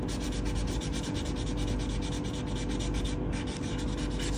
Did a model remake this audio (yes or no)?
no